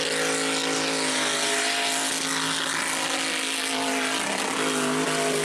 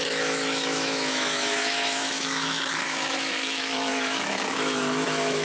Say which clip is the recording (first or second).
first